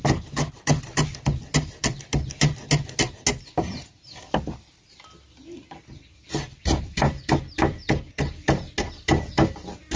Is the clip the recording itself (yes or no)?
yes